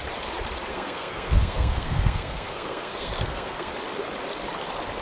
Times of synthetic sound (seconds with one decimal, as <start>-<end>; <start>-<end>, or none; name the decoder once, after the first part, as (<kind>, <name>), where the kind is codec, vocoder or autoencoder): 0.7-3.7 (codec, SNAC)

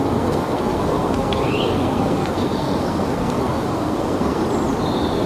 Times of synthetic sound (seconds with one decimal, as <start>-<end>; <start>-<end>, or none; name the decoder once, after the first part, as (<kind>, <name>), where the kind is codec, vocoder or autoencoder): 0.0-4.4 (codec, SNAC)

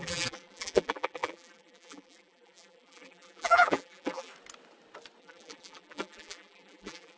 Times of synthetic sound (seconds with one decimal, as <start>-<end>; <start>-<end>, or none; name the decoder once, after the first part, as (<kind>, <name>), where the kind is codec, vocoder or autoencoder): 0.0-4.3 (vocoder, BigVGAN v2); 5.2-7.2